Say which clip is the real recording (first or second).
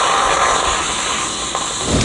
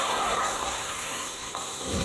first